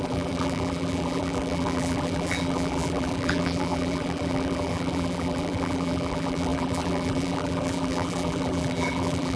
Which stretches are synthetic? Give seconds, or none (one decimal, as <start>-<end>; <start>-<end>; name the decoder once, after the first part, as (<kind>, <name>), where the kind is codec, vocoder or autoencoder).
0.0-9.4 (vocoder, BigVGAN v2)